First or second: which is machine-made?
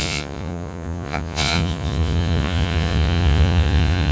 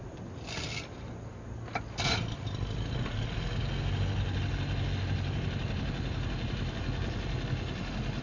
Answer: first